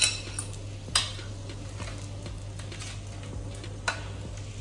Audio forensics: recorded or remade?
recorded